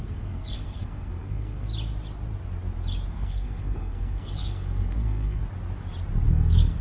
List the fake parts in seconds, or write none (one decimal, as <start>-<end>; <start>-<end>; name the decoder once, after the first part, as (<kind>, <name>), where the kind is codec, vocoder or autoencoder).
0.0-1.7 (codec, SNAC); 3.1-5.4; 6.3-6.8